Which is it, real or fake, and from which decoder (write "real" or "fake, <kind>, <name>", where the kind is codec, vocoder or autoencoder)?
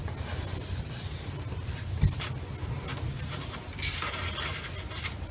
real